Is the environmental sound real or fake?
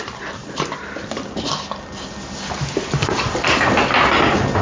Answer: real